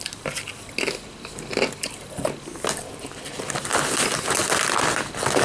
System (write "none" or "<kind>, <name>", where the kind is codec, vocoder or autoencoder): none